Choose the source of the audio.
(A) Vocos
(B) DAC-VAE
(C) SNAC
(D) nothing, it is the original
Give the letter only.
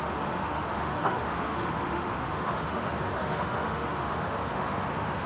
B